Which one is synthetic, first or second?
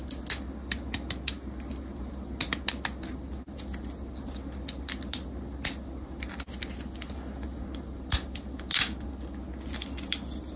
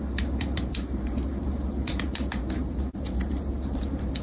second